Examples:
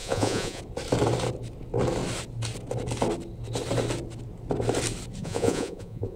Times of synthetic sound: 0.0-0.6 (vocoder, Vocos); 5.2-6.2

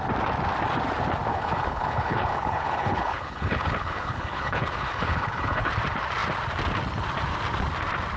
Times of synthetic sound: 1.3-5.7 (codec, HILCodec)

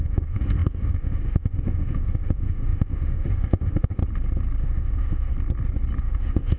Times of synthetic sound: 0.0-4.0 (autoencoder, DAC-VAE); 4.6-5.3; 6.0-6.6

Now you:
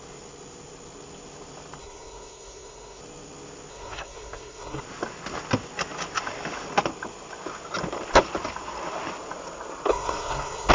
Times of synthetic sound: 1.8-3.0 (codec, SNAC); 3.7-4.8; 9.9-10.7

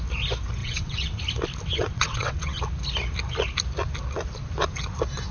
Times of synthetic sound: 0.6-1.2 (vocoder, WaveNeXt); 1.7-2.6